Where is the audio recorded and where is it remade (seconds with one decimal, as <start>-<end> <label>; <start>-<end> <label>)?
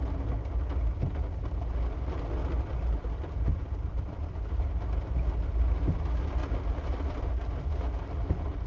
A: 0.0-2.4 recorded; 2.4-4.4 remade; 4.4-8.7 recorded